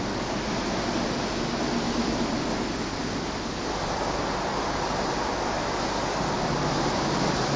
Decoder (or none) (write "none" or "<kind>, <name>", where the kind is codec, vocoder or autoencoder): none